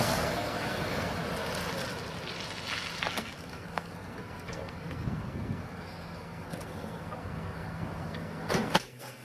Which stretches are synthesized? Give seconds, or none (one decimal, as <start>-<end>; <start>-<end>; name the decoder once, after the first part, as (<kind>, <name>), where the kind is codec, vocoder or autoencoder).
0.0-1.2 (codec, SNAC); 3.0-9.2